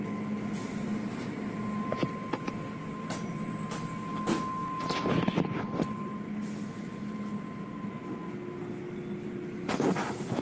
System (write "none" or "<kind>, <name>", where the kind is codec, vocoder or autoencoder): none